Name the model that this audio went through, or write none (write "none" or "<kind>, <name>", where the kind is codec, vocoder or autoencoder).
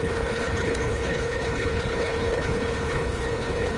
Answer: codec, HILCodec